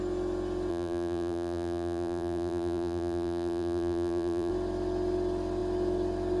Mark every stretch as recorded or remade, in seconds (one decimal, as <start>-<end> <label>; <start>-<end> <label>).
0.0-0.7 recorded; 0.7-4.5 remade; 4.5-6.4 recorded